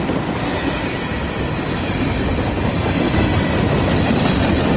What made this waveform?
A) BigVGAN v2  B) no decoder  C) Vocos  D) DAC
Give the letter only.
A